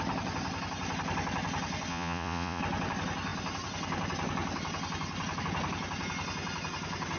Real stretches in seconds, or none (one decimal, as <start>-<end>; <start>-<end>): 0.0-1.9; 2.6-7.2